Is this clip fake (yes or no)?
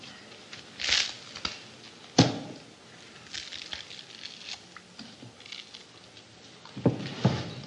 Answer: no